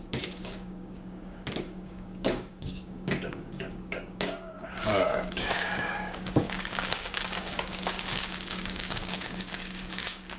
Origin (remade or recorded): remade